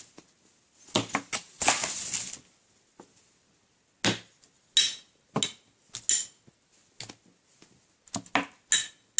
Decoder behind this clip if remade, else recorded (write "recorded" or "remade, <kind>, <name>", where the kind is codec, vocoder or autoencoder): recorded